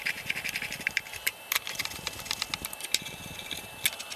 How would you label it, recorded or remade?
recorded